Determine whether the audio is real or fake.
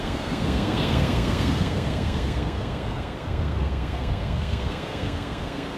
fake